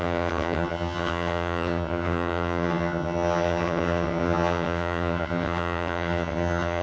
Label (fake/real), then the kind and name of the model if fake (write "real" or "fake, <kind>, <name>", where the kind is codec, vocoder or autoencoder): fake, vocoder, HiFi-GAN